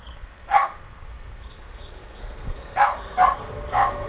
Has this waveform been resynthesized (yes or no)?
yes